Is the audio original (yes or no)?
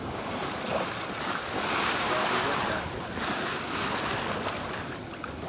yes